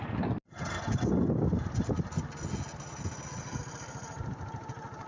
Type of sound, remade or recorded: recorded